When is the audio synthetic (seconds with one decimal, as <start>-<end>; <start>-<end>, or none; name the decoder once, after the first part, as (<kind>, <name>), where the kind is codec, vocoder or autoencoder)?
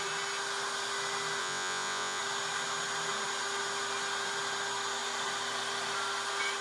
1.4-2.2 (vocoder, Vocos)